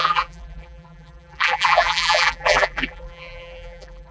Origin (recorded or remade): remade